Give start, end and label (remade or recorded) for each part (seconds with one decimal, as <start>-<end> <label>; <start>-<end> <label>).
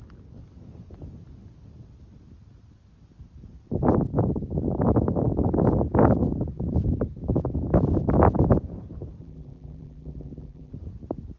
0.0-9.2 recorded; 9.2-10.7 remade; 10.7-11.4 recorded